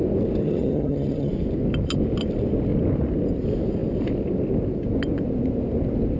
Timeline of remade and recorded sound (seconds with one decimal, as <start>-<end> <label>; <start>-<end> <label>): 0.0-0.4 recorded; 0.4-1.3 remade; 1.3-6.2 recorded